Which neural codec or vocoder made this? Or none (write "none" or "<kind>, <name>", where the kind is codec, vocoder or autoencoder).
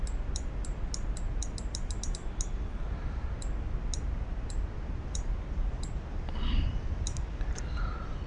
none